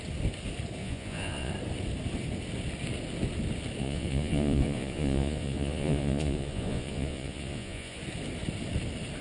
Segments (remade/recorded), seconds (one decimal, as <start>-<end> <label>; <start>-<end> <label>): 0.0-0.8 recorded; 0.8-1.5 remade; 1.5-3.8 recorded; 3.8-8.0 remade; 8.0-9.2 recorded